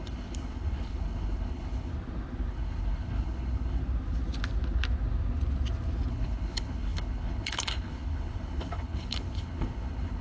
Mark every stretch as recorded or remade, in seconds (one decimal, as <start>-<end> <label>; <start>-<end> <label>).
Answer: 0.0-1.9 remade; 1.9-2.5 recorded; 2.5-3.8 remade; 3.8-6.1 recorded; 6.1-10.2 remade